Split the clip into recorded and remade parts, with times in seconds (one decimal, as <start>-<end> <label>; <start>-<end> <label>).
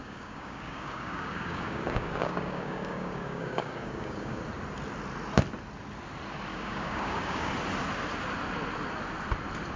0.0-4.4 remade; 4.4-6.5 recorded; 6.5-7.5 remade; 7.5-9.8 recorded